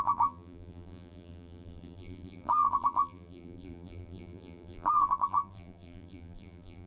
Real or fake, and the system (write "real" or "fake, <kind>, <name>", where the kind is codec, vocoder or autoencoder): fake, vocoder, BigVGAN v2